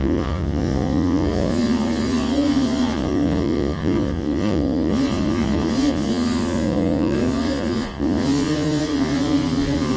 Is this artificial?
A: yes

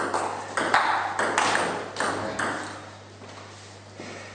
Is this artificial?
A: no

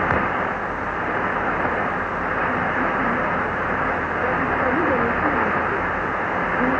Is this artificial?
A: no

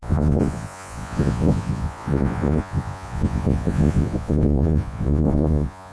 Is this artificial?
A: yes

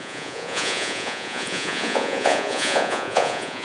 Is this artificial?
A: yes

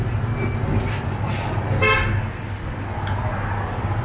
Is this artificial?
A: no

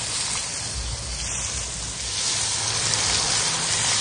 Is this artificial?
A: no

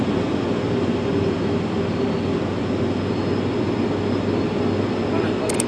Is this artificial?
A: no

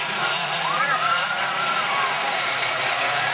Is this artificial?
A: yes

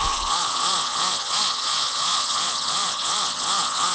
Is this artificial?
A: yes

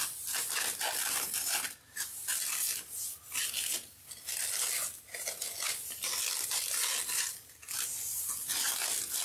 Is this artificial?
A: no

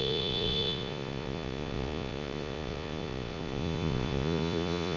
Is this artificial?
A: yes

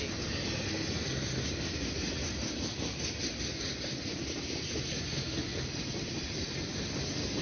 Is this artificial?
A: no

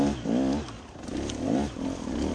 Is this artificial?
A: no